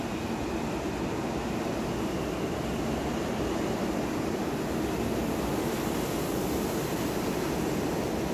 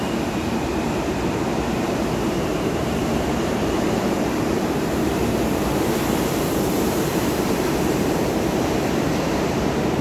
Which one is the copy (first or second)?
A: second